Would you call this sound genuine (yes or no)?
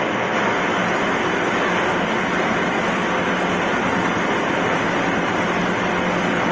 yes